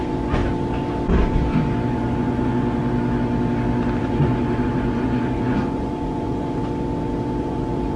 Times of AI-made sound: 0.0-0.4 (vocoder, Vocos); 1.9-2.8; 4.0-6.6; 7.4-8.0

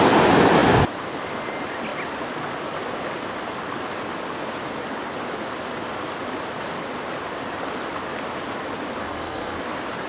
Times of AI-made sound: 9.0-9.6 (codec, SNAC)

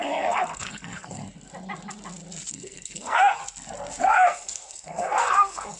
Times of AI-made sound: 0.0-1.2 (codec, SNAC); 2.5-3.4; 4.0-5.8

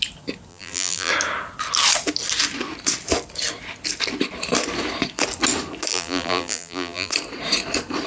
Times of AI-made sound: 0.5-1.1 (vocoder, BigVGAN v2); 5.9-7.1

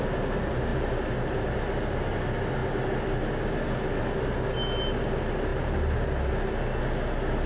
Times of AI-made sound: none